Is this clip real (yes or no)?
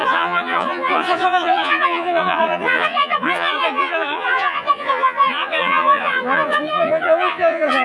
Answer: no